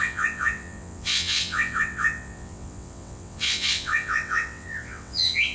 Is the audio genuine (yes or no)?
no